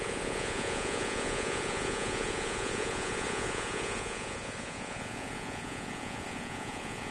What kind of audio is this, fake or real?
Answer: fake